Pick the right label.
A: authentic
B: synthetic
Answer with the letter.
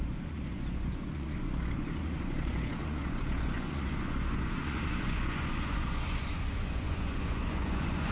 B